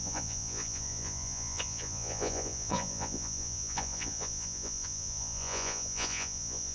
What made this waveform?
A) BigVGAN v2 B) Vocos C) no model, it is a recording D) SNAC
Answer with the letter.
B